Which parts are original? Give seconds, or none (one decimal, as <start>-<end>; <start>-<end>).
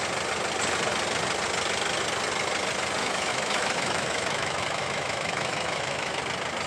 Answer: 0.0-3.0; 6.2-6.7